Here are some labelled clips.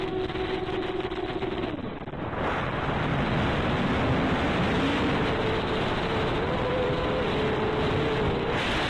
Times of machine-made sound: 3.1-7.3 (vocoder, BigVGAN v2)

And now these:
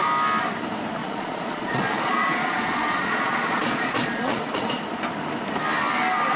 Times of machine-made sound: 1.0-4.8 (vocoder, Vocos)